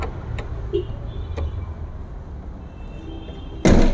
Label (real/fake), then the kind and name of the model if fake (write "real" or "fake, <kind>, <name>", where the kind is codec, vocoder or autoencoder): real